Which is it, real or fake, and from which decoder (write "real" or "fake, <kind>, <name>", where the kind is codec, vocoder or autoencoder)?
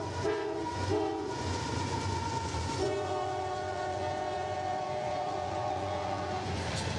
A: fake, vocoder, Vocos